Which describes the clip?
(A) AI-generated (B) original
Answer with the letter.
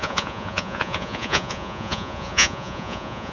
A